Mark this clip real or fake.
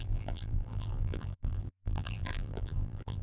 fake